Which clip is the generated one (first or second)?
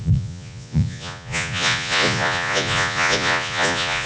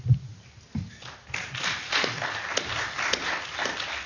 first